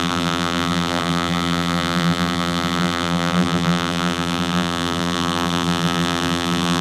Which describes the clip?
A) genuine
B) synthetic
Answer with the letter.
B